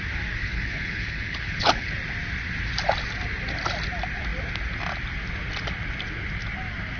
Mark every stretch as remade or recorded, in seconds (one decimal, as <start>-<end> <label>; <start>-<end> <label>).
0.0-0.4 recorded; 0.4-1.9 remade; 1.9-7.0 recorded